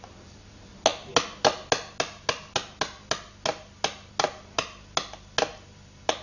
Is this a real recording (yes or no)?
yes